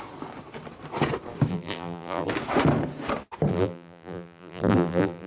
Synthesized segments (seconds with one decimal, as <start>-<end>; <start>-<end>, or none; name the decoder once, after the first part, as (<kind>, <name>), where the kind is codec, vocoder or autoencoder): 1.5-2.3 (vocoder, BigVGAN v2); 3.5-5.3